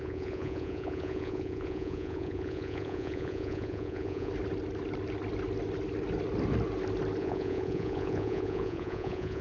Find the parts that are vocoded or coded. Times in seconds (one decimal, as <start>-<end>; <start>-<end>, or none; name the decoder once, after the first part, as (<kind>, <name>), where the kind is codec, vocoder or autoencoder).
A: 0.0-4.3 (vocoder, Vocos); 7.2-9.4